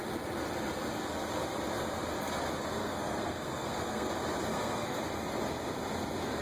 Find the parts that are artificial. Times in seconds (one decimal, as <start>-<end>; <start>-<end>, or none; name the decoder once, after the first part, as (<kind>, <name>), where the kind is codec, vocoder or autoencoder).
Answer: 2.8-4.1 (codec, SNAC); 4.5-5.0